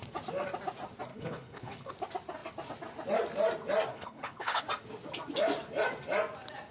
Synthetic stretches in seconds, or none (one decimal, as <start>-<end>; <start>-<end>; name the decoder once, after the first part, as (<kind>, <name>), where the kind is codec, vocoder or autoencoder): 1.1-1.9 (codec, HILCodec); 3.9-4.6